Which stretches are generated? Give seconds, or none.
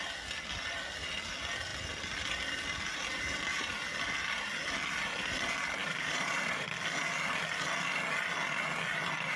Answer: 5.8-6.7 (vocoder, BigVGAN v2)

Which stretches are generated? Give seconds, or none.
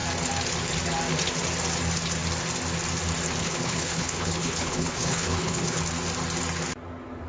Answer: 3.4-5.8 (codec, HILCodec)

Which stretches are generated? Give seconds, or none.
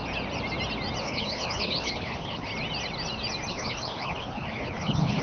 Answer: 1.0-2.5 (codec, HILCodec); 3.5-5.2